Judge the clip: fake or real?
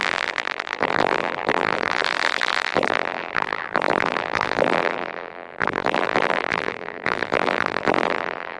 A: fake